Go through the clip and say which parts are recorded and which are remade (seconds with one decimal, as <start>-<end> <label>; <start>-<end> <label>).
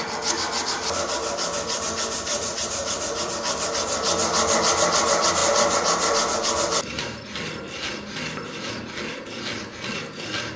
0.0-2.3 recorded; 2.3-3.3 remade; 3.3-10.6 recorded